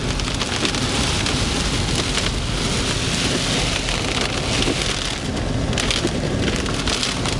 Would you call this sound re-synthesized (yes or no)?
no